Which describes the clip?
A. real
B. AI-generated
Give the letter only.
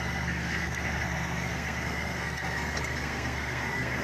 B